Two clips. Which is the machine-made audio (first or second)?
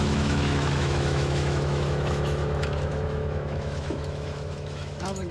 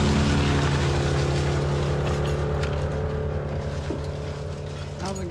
first